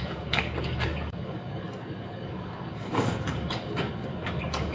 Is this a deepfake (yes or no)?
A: yes